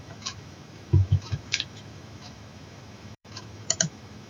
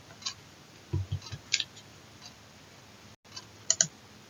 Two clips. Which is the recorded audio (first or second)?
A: second